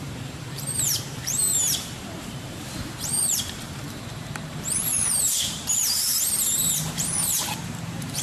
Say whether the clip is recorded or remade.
remade